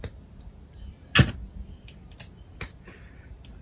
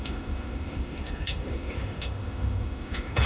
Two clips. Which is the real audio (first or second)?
first